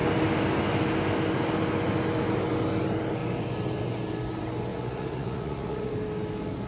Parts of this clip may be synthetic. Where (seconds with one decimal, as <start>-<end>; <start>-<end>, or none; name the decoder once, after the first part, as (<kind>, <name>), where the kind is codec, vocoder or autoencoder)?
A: 4.7-5.9 (vocoder, Vocos)